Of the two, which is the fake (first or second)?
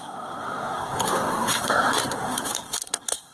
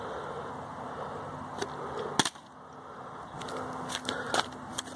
first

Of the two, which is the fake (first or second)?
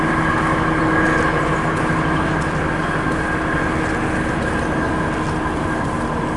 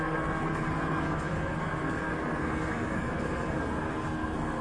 second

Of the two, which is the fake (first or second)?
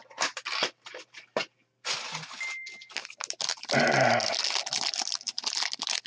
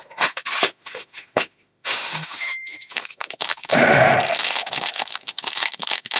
second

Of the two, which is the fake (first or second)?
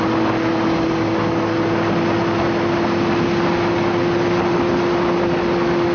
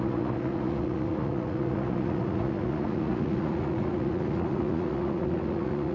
second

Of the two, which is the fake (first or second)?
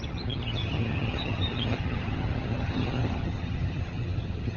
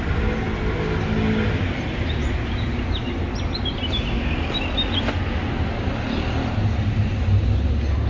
first